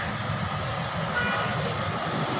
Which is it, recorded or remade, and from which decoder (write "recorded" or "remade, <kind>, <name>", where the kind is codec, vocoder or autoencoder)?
recorded